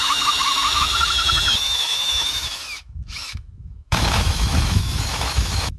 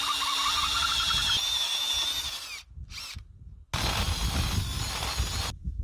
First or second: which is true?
second